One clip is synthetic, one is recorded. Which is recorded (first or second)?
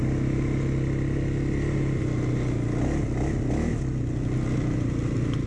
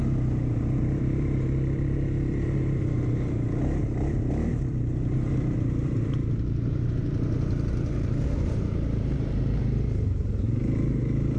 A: first